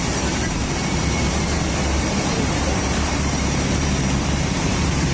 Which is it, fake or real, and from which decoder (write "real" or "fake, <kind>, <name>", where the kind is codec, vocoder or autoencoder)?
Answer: fake, vocoder, BigVGAN v2